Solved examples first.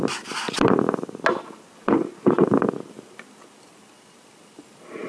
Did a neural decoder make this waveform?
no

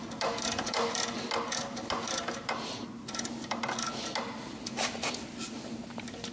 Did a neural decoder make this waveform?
no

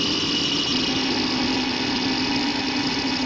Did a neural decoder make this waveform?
no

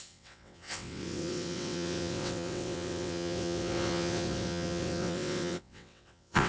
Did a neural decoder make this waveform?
yes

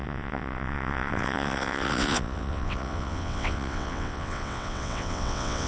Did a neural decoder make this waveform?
yes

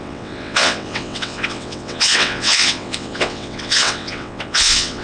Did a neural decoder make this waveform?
yes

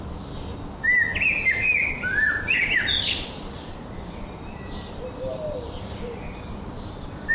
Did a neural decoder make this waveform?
no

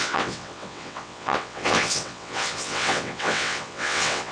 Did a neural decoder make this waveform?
yes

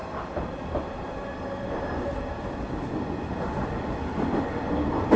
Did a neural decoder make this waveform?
no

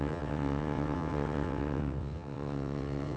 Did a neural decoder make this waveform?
yes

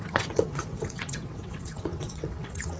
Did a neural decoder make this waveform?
yes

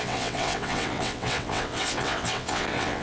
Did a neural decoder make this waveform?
yes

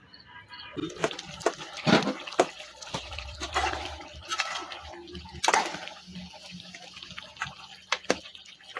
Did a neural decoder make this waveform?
no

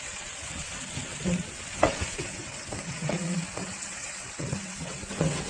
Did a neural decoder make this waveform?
yes